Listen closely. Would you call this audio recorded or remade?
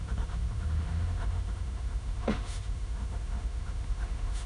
remade